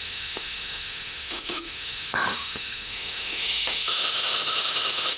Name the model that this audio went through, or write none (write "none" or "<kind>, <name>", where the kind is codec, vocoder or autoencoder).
autoencoder, DAC-VAE